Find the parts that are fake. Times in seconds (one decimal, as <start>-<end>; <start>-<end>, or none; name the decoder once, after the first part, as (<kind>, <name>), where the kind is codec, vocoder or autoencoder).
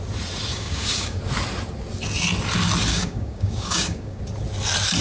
0.5-1.2 (codec, DAC); 2.9-4.2